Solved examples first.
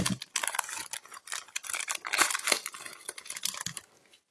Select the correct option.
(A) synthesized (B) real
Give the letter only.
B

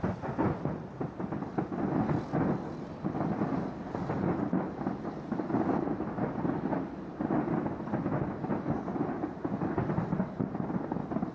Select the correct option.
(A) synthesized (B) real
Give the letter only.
B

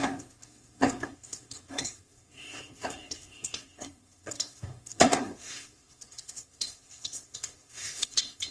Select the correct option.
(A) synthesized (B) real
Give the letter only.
A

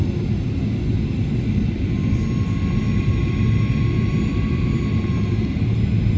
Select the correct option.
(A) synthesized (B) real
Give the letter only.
B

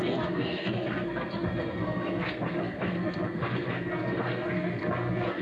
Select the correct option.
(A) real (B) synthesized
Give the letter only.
B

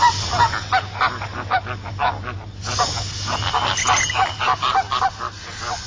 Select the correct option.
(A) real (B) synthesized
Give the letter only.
A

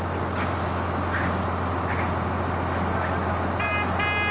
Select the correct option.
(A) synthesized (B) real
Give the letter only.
B